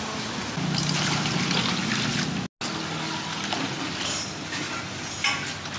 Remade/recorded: recorded